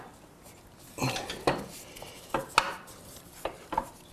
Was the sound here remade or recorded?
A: recorded